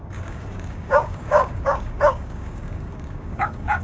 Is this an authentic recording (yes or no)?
no